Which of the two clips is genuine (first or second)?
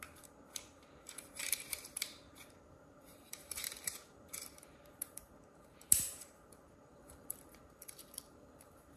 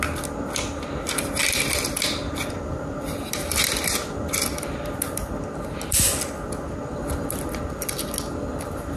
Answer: second